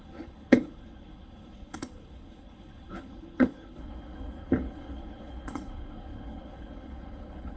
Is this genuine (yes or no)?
no